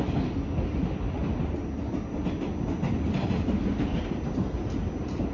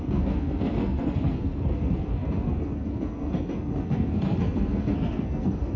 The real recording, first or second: first